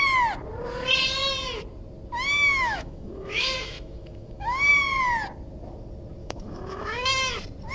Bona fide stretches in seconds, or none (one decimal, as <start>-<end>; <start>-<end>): 0.0-2.5; 4.7-6.2; 7.3-7.7